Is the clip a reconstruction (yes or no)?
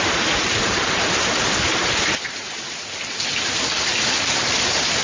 no